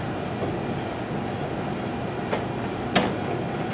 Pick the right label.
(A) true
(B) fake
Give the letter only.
A